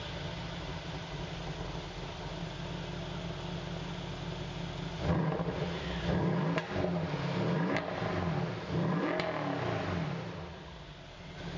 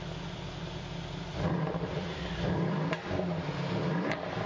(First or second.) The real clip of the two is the first